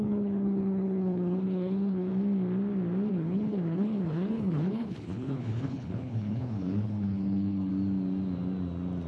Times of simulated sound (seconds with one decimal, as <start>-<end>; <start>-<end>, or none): 0.0-2.1; 3.1-7.7